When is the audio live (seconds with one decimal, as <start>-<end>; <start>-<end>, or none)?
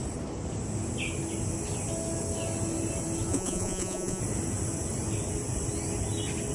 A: 0.0-3.3; 4.2-6.5